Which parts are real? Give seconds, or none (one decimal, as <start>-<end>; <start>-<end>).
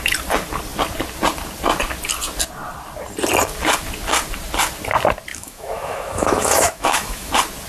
0.0-5.3; 7.3-7.7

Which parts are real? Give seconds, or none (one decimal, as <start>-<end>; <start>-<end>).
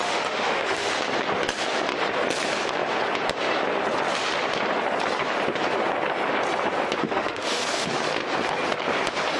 0.9-7.0; 7.9-9.4